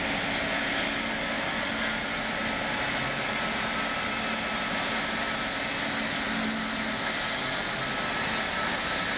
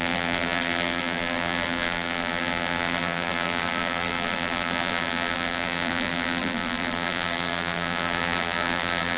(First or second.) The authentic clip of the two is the first